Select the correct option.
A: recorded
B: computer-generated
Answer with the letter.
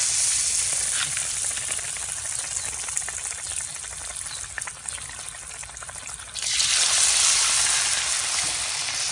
A